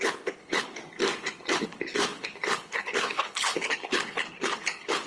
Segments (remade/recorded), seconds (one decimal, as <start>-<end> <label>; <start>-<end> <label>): 0.0-0.8 remade; 0.8-1.6 recorded; 1.6-5.1 remade